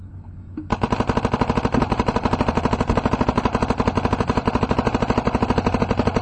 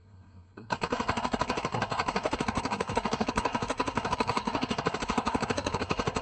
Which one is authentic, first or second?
first